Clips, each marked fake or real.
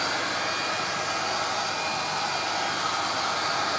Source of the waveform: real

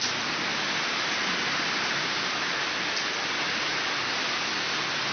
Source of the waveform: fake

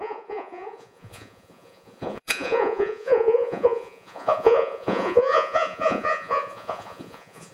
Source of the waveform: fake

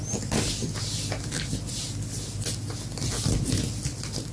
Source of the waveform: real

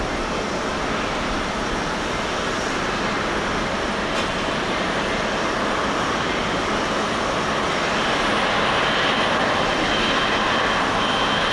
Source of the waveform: real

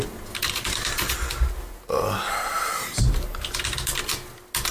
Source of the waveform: real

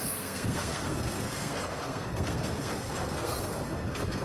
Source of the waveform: fake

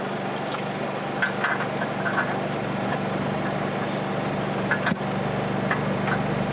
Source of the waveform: real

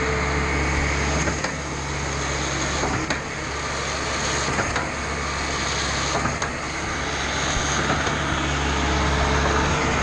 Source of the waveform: real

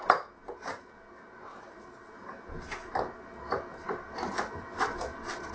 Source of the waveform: real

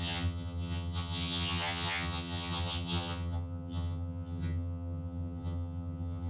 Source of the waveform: fake